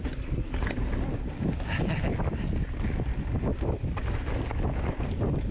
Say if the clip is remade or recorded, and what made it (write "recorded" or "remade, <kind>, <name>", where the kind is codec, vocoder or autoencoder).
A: recorded